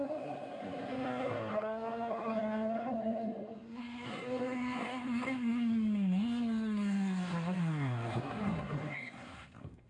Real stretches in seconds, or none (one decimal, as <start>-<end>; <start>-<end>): none